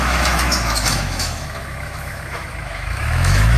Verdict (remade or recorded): remade